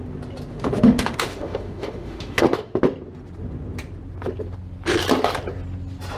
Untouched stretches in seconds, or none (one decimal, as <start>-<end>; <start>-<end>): 0.0-0.5; 2.8-6.2